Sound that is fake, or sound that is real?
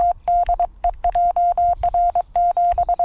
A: real